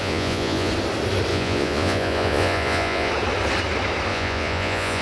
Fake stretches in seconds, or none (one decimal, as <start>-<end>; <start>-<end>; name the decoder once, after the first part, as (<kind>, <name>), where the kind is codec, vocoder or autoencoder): 0.0-0.7 (vocoder, Vocos); 1.3-3.1; 4.1-5.0